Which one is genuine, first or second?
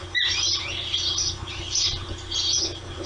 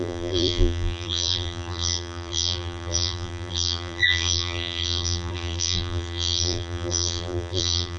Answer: first